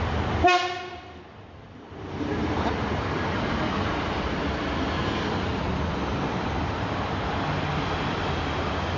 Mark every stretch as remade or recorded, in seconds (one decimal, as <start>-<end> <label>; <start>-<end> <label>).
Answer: 0.0-9.0 recorded